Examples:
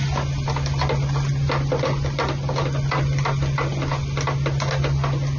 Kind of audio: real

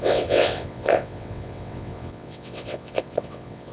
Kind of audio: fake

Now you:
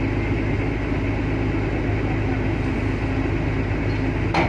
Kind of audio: real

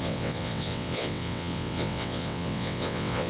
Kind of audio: fake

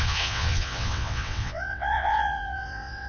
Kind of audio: fake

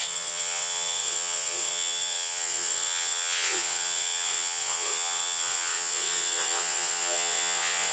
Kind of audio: fake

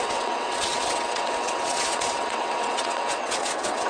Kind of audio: fake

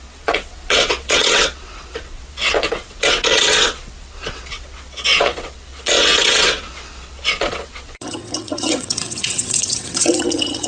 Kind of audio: fake